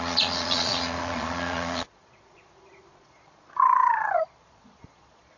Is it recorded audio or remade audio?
remade